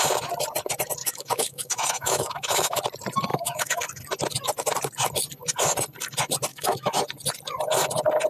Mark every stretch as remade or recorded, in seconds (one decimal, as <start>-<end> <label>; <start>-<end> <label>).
0.0-1.0 recorded; 1.0-2.8 remade; 2.8-3.3 recorded; 3.3-3.8 remade; 3.8-6.5 recorded; 6.5-7.0 remade; 7.0-8.3 recorded